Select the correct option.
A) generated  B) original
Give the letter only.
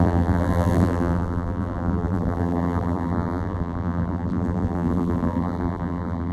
A